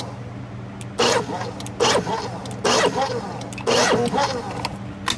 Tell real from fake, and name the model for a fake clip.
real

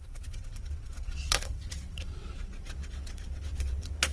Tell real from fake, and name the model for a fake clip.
fake, vocoder, WaveNeXt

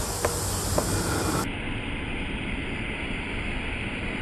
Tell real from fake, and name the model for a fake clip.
real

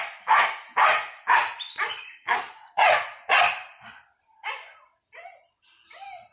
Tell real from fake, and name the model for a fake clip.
real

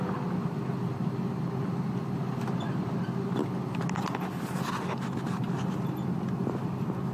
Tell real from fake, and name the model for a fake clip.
real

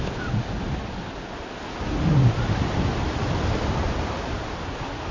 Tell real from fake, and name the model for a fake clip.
real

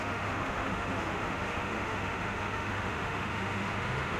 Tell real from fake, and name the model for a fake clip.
fake, autoencoder, DAC-VAE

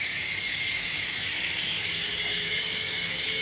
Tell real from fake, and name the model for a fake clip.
fake, codec, DAC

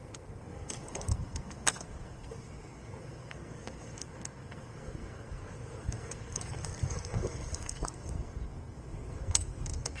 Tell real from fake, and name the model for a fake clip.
fake, codec, SNAC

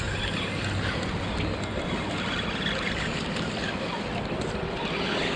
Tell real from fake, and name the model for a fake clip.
real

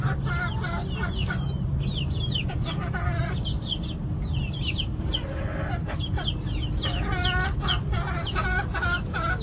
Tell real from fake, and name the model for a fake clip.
real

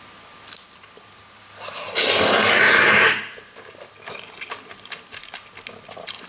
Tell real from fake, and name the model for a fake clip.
real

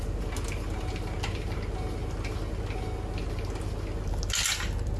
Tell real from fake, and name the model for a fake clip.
real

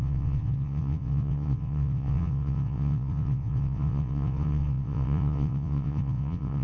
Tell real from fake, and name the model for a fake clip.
fake, vocoder, WaveNeXt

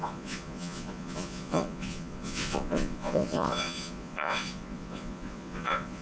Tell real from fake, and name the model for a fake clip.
fake, vocoder, Vocos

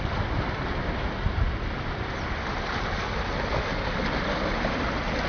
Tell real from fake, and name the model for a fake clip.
real